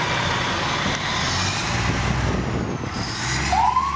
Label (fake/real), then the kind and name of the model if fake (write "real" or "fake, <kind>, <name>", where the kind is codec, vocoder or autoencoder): real